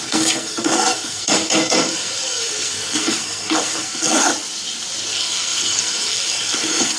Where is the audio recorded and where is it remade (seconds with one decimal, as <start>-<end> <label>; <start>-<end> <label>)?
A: 0.0-4.3 remade; 4.3-5.1 recorded; 5.1-7.0 remade